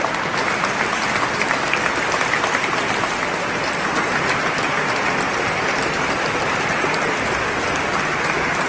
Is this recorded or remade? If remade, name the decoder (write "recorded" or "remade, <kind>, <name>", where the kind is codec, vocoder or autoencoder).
recorded